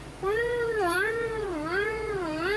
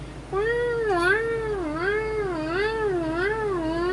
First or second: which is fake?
first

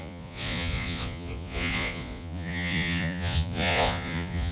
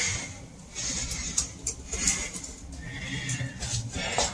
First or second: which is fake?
first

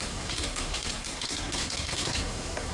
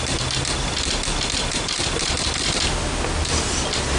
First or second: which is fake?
first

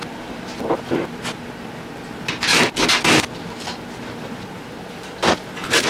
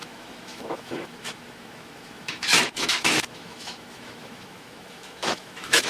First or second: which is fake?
second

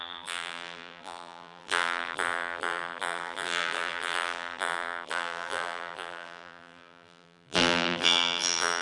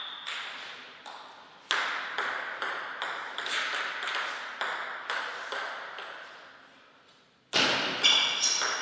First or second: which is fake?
first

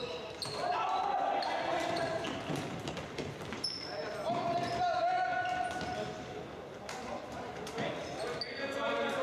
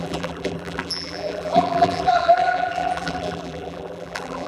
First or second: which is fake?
second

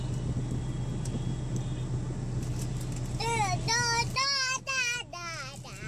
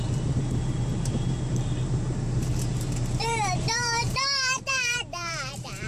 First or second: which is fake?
second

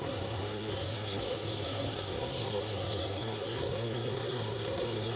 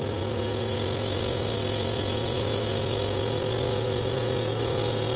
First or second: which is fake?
first